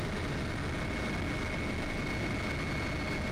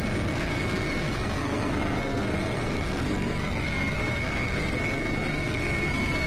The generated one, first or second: second